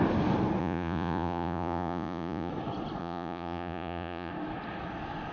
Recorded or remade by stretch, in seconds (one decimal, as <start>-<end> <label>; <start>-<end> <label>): 0.0-0.6 recorded; 0.6-2.5 remade; 2.5-3.0 recorded; 3.0-4.3 remade; 4.3-5.3 recorded